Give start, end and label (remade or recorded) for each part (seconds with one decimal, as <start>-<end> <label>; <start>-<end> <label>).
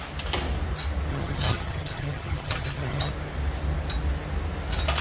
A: 0.0-1.1 recorded; 1.1-3.1 remade; 3.1-5.0 recorded